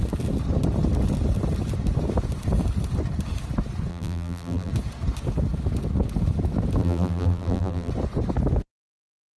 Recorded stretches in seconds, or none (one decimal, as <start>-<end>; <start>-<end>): 0.0-3.9; 4.7-6.8; 7.9-9.4